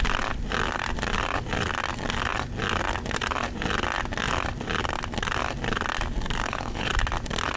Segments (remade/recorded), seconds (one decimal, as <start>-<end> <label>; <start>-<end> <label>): 0.0-6.4 recorded; 6.4-6.9 remade; 6.9-7.6 recorded